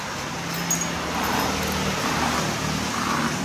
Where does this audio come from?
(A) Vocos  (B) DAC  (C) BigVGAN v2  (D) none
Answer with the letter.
D